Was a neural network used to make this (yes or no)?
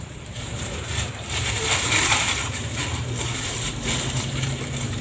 yes